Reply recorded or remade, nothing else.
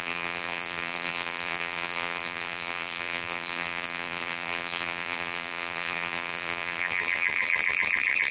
remade